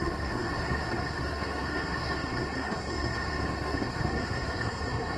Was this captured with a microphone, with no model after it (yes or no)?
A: no